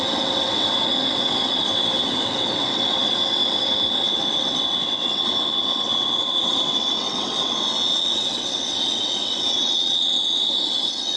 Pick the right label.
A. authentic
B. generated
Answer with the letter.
B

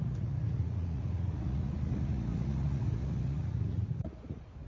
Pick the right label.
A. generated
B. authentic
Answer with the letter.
A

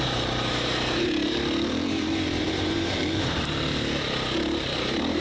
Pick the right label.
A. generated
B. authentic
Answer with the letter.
A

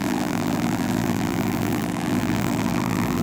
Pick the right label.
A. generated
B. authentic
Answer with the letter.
A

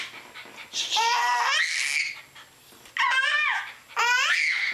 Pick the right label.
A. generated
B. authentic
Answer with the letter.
B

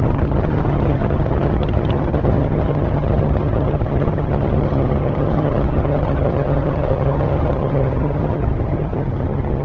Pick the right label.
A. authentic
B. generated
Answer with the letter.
B